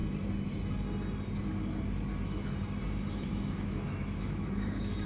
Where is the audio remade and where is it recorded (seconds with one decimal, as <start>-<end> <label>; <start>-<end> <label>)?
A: 0.0-3.1 recorded; 3.1-5.1 remade